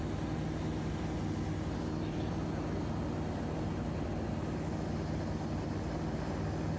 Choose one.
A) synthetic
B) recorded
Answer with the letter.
B